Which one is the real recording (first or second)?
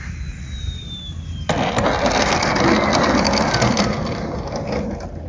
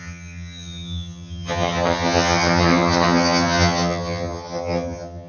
first